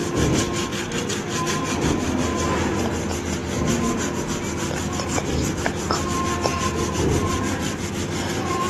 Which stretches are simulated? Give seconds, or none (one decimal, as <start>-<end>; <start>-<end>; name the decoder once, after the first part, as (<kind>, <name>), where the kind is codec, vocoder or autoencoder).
0.0-8.7 (vocoder, BigVGAN v2)